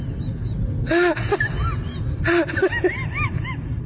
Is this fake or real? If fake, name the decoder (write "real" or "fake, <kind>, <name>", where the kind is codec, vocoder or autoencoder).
real